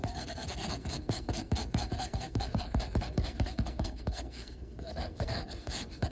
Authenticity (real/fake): fake